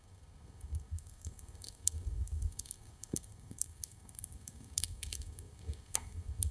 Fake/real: fake